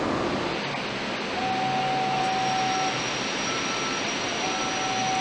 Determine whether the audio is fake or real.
real